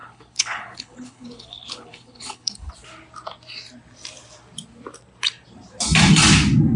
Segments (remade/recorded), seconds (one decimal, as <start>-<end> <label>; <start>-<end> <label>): 0.0-2.7 remade; 2.7-6.8 recorded